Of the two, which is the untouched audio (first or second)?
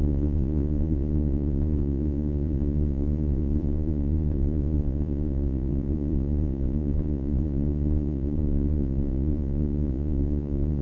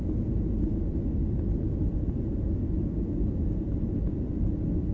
second